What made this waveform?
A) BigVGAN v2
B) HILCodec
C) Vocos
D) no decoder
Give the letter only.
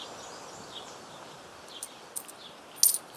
D